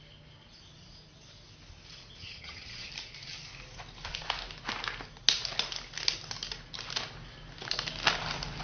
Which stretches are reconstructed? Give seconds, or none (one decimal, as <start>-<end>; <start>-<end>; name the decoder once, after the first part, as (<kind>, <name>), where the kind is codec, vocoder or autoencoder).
2.2-2.9 (vocoder, HiFi-GAN)